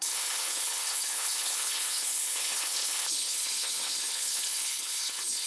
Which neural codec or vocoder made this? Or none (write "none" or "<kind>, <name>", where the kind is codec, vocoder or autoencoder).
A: codec, HILCodec